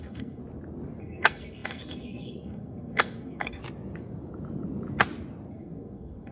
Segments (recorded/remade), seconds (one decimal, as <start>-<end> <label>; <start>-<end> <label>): 0.0-0.4 remade; 0.4-1.0 recorded; 1.0-3.6 remade; 3.6-5.5 recorded; 5.5-6.3 remade